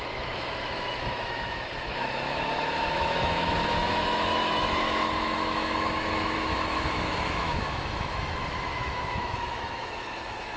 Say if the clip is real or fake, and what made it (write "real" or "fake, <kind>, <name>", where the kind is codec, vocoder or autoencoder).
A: fake, autoencoder, DAC-VAE